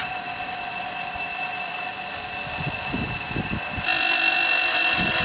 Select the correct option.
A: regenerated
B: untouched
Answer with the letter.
A